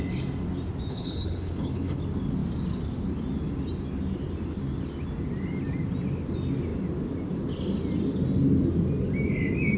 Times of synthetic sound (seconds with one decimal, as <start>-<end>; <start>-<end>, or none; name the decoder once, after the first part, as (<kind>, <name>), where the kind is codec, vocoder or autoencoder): 0.9-2.0 (codec, HILCodec)